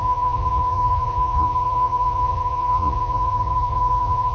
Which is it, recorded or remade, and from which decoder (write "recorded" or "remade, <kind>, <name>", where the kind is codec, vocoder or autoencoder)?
remade, vocoder, Vocos